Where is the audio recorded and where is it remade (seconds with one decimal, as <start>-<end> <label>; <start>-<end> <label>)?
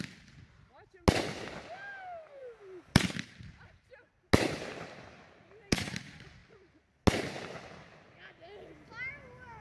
0.0-9.6 recorded